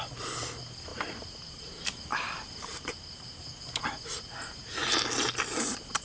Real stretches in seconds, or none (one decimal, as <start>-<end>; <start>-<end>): 0.0-6.0